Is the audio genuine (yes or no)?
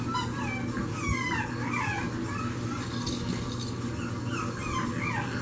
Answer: yes